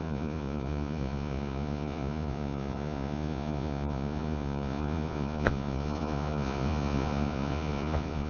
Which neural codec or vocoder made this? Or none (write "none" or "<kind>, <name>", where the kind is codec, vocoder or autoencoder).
vocoder, Vocos